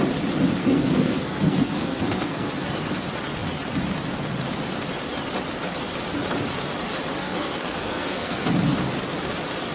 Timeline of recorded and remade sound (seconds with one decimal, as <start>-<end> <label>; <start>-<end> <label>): 0.0-0.6 recorded; 0.6-2.5 remade; 2.5-7.2 recorded; 7.2-8.5 remade; 8.5-9.7 recorded